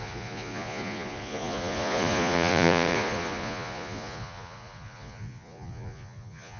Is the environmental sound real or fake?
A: fake